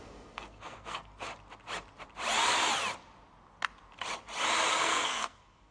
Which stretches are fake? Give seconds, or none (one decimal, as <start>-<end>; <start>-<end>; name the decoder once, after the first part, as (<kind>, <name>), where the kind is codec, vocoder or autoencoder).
0.0-1.3 (codec, SNAC); 4.7-5.7

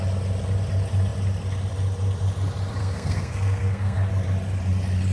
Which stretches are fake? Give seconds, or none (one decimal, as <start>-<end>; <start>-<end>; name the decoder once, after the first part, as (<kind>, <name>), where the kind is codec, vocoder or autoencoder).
2.8-4.1 (codec, SNAC)

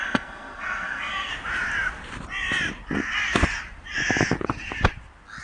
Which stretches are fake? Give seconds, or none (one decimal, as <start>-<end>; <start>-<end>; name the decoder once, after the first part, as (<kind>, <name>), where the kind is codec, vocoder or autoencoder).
0.0-1.3 (codec, SNAC)

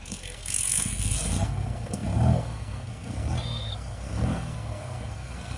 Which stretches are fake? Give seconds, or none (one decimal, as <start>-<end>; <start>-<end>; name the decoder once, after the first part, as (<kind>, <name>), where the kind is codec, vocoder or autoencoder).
0.0-5.6 (codec, SNAC)

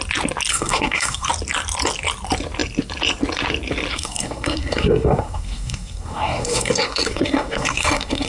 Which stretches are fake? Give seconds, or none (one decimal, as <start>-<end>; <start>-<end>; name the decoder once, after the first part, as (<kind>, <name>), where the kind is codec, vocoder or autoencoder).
0.5-1.3 (codec, SNAC); 3.9-8.3

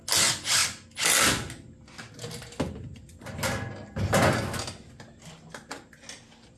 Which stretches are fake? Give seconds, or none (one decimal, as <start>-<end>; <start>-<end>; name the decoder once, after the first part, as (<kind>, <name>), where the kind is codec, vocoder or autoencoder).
none